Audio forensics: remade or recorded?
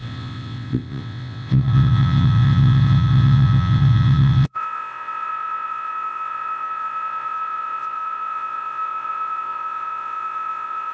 remade